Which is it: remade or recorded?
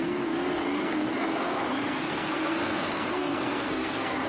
remade